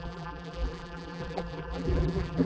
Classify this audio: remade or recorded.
remade